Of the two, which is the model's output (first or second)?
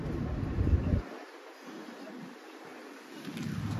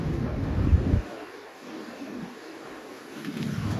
second